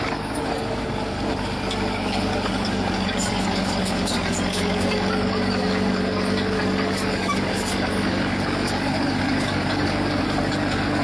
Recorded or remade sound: remade